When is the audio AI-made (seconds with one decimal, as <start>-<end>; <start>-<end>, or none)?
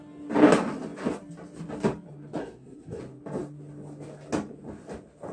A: 2.4-3.0